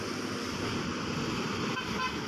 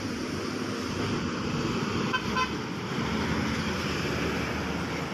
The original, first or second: second